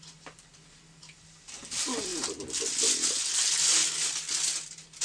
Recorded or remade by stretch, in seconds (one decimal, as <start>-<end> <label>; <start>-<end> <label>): 0.0-5.0 recorded